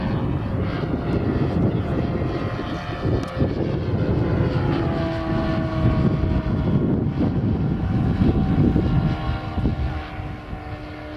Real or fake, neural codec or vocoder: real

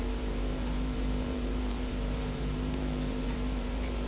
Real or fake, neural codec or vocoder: fake, vocoder, BigVGAN v2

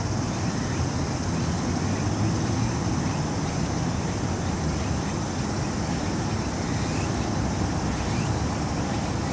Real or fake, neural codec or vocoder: real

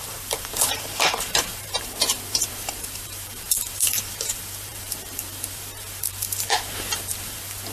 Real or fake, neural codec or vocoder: fake, vocoder, BigVGAN v2